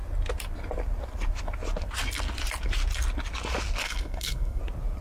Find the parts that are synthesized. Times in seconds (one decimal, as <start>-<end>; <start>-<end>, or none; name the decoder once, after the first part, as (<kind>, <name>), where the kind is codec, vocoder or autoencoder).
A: 3.8-4.6 (codec, SNAC)